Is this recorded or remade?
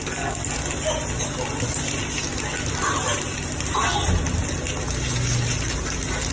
recorded